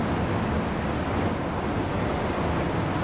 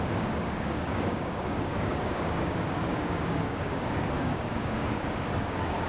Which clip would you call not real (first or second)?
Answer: second